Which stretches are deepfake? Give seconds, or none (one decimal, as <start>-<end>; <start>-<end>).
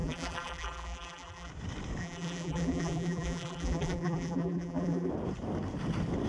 0.0-1.5; 2.0-5.1